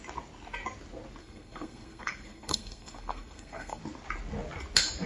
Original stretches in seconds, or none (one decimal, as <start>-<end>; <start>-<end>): 0.0-1.2; 3.8-5.1